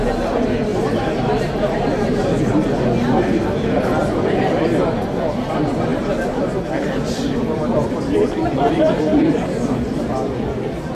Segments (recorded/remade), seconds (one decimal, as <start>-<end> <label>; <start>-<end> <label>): 0.0-0.7 recorded; 0.7-2.4 remade; 2.4-10.9 recorded